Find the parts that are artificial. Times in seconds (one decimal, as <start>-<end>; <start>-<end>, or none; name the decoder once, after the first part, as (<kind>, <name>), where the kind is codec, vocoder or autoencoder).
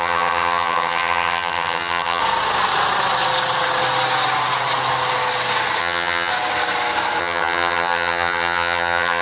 0.0-2.2 (vocoder, HiFi-GAN); 5.8-6.3; 7.2-9.2